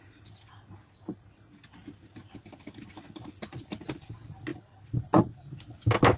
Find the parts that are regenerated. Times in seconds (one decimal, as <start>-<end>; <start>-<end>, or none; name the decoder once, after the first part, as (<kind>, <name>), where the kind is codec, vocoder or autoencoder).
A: none